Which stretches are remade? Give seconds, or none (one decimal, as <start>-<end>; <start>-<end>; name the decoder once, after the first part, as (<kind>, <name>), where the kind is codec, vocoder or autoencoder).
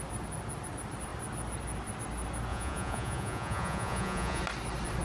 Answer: 2.5-4.4 (vocoder, Vocos)